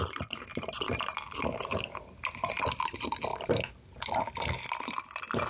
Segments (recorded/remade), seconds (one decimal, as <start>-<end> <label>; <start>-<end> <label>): 0.0-5.5 recorded